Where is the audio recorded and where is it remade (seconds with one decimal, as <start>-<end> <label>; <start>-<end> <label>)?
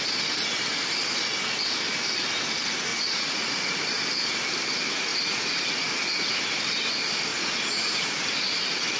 0.0-2.9 recorded; 2.9-3.8 remade; 3.8-5.1 recorded; 5.1-6.3 remade; 6.3-7.3 recorded; 7.3-8.1 remade; 8.1-9.0 recorded